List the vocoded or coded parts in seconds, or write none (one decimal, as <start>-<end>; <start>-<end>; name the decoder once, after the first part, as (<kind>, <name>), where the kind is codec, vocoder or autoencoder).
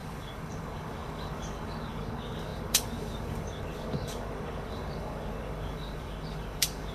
0.0-6.9 (codec, DAC)